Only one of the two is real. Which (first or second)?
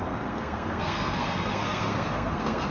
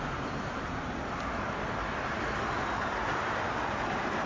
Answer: second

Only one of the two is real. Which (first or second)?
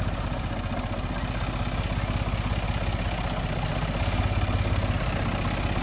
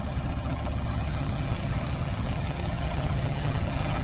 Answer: first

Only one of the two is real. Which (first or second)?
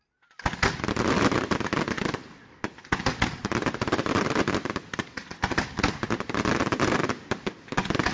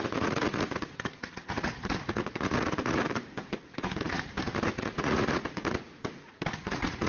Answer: first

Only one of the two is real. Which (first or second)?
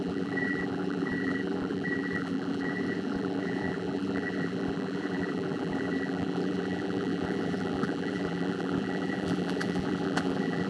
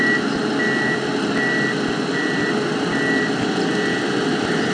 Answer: second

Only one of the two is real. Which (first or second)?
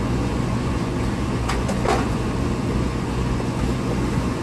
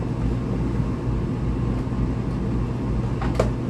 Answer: second